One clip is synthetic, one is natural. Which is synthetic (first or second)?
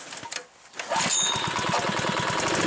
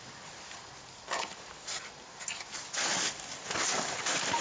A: second